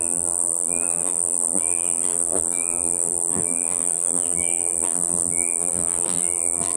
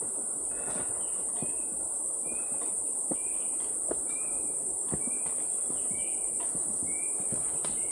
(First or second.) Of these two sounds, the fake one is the first